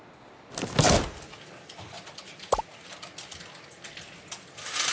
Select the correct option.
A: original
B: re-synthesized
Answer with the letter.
A